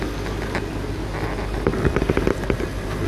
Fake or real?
real